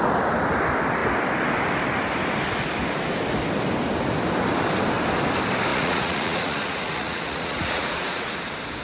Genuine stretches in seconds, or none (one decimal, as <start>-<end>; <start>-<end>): 0.0-5.7; 8.3-8.8